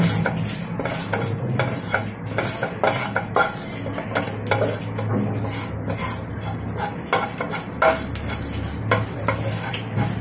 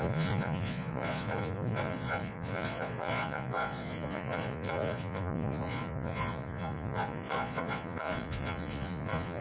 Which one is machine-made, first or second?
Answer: second